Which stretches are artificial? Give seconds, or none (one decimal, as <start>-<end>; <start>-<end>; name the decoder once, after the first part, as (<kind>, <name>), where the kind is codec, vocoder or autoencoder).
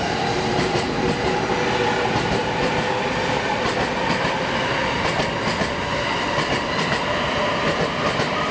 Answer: none